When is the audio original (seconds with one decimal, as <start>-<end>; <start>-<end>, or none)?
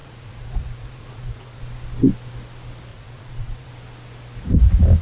1.6-2.9; 3.7-5.0